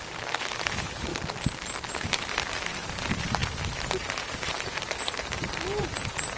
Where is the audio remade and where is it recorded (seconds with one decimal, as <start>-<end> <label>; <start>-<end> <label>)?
0.0-1.1 remade; 1.1-1.9 recorded; 1.9-6.4 remade